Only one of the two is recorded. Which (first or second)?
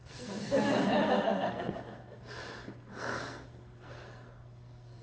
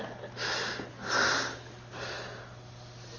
second